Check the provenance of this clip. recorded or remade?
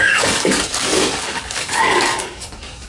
remade